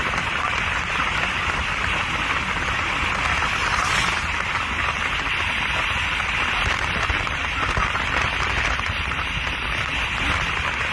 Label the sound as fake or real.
real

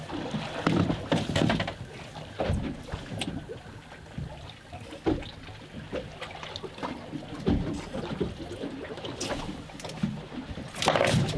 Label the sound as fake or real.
real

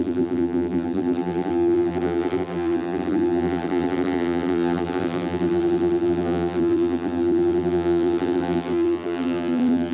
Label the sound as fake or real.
fake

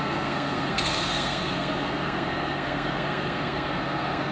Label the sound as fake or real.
fake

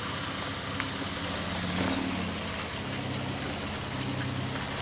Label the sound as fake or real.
real